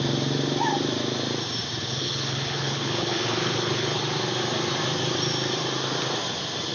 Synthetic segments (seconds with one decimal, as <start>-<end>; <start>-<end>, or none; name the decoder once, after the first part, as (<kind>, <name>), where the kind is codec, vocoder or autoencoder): 1.8-4.0 (codec, HILCodec)